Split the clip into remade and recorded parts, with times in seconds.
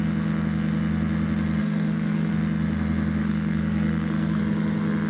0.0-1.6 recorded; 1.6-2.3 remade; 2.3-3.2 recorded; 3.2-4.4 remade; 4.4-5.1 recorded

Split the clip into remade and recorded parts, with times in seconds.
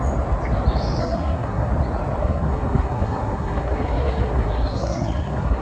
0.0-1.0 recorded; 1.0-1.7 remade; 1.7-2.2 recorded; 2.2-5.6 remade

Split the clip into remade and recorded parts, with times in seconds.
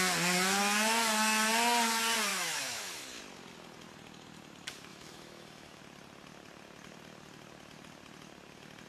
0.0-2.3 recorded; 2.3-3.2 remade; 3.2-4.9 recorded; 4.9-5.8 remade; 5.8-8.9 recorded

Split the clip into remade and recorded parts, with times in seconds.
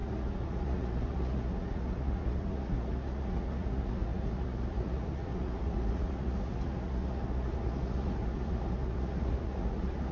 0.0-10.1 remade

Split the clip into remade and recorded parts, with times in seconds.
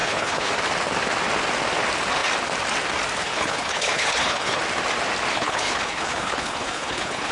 0.0-0.5 remade; 0.5-3.2 recorded; 3.2-4.6 remade; 4.6-5.3 recorded; 5.3-7.3 remade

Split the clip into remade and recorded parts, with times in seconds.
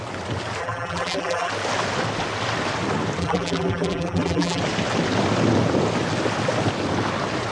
0.0-0.6 recorded; 0.6-1.5 remade; 1.5-3.2 recorded; 3.2-4.6 remade; 4.6-7.5 recorded